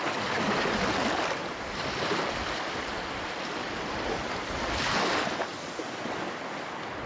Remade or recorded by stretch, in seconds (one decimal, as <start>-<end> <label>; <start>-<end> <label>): 0.0-1.4 recorded; 1.4-4.3 remade; 4.3-5.5 recorded; 5.5-6.2 remade; 6.2-7.1 recorded